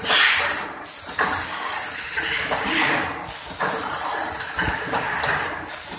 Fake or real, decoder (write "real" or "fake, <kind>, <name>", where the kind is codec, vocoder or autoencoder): real